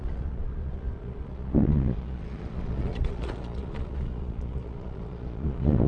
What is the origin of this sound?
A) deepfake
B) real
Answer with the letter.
A